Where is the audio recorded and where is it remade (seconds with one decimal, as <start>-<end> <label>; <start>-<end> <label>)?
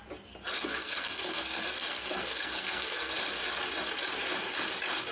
0.0-0.6 recorded; 0.6-3.1 remade; 3.1-5.1 recorded